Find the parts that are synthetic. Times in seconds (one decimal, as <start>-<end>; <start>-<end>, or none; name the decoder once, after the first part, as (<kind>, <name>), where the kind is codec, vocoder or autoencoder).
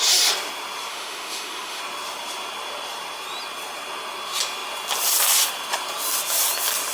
0.9-1.8 (autoencoder, DAC-VAE)